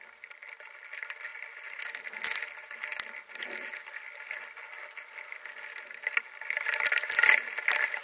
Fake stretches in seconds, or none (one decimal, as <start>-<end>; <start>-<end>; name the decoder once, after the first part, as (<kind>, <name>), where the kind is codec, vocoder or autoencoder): none